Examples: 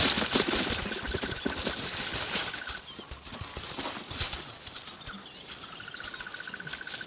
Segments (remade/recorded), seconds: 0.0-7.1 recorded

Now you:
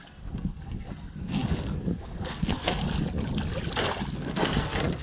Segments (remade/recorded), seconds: 0.0-2.8 remade; 2.8-4.1 recorded; 4.1-5.0 remade

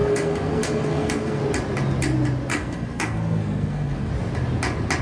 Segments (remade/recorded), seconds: 0.0-1.4 remade; 1.4-2.5 recorded; 2.5-4.1 remade; 4.1-5.0 recorded

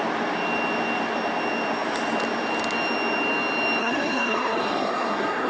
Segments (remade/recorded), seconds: 0.0-3.8 recorded; 3.8-5.5 remade

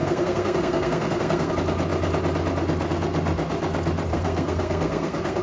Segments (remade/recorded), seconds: 0.0-1.5 remade; 1.5-4.1 recorded; 4.1-5.4 remade